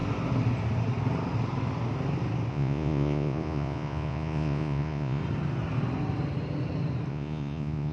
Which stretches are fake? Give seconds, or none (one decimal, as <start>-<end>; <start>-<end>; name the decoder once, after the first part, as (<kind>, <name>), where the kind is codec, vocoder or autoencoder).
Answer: 2.5-5.2 (vocoder, Vocos); 7.1-7.9